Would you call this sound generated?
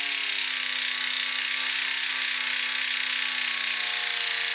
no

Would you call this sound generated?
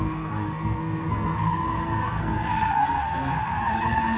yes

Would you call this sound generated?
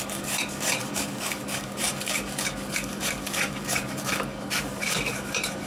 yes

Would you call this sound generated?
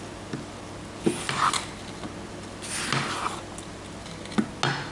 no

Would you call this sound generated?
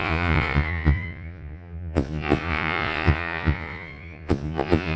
yes